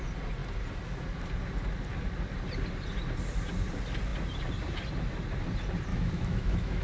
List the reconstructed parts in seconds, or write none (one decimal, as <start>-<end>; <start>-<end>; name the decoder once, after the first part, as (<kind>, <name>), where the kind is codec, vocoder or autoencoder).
5.9-6.8 (autoencoder, DAC-VAE)